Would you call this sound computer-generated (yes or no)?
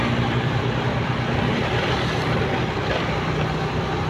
yes